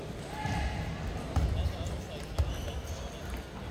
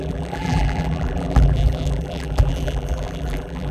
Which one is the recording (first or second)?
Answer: first